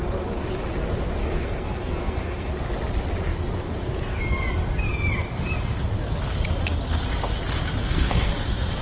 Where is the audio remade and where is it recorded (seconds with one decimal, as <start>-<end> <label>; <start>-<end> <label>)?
0.0-1.2 recorded; 1.2-2.5 remade; 2.5-7.8 recorded; 7.8-8.3 remade; 8.3-8.8 recorded